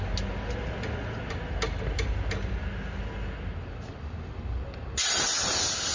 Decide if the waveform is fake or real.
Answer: real